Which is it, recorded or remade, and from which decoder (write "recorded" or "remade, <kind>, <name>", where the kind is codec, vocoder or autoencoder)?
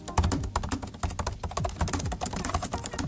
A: recorded